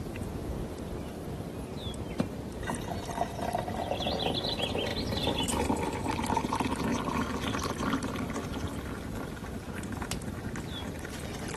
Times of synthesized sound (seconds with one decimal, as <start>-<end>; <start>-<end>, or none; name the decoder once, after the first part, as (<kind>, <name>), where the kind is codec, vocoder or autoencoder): 4.9-5.6 (vocoder, BigVGAN v2)